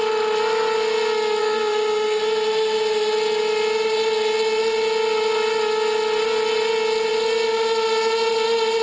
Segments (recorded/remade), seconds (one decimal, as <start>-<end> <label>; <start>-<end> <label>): 0.0-1.4 recorded; 1.4-2.2 remade; 2.2-8.8 recorded